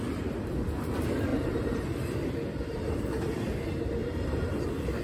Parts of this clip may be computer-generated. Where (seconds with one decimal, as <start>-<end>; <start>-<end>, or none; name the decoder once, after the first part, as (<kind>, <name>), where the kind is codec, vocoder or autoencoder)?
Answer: 1.3-2.3 (vocoder, BigVGAN v2); 4.0-5.0